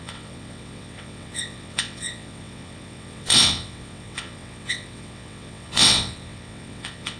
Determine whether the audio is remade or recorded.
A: remade